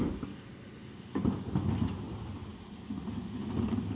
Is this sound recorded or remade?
recorded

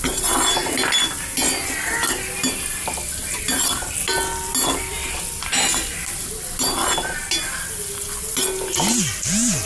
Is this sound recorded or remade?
recorded